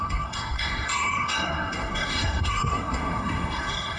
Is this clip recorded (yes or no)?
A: no